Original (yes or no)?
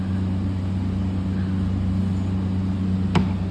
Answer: yes